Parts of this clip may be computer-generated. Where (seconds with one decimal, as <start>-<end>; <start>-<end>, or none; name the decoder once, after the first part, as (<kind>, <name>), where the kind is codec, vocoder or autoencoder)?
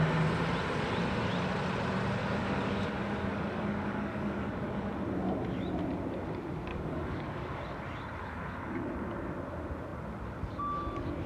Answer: 2.2-4.9 (codec, DAC); 6.7-7.6; 8.2-8.9